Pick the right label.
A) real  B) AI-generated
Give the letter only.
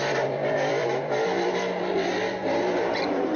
B